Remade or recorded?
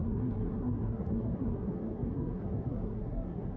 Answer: remade